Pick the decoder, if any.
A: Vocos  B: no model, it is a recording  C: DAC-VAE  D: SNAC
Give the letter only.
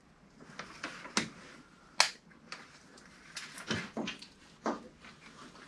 B